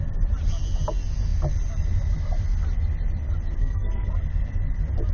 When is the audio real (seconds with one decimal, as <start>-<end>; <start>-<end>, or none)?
0.0-3.6; 4.1-5.1